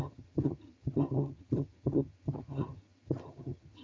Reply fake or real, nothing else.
fake